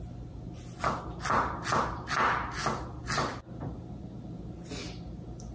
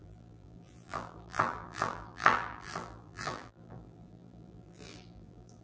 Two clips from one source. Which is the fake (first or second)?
second